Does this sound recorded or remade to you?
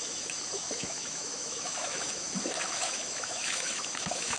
remade